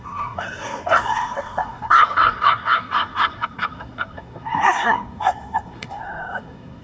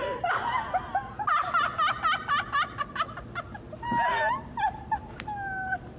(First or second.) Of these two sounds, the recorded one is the second